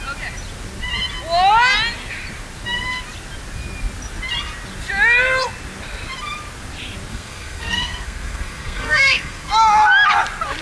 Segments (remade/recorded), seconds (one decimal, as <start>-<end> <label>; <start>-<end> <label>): 0.0-7.1 recorded; 7.1-9.5 remade; 9.5-10.6 recorded